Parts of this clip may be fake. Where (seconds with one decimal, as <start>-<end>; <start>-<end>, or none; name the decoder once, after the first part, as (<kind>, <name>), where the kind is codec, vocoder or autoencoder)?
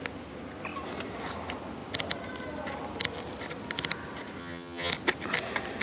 4.4-4.9 (vocoder, HiFi-GAN)